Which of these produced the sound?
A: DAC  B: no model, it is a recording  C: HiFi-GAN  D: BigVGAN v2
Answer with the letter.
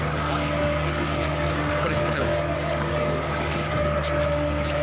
A